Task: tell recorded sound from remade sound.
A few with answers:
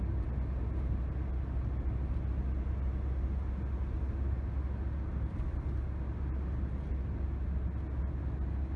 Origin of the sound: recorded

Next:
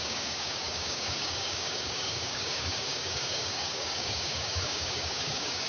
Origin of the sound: remade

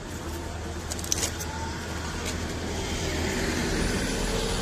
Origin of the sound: recorded